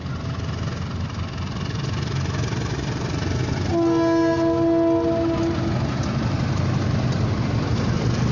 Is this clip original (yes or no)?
yes